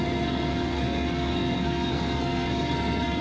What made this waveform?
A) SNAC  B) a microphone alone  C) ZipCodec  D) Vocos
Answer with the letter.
A